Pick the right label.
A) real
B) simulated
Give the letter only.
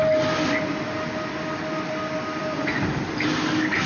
A